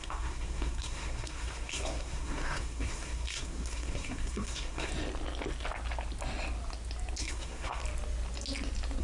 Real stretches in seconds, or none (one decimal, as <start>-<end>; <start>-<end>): 4.9-7.2; 7.8-9.0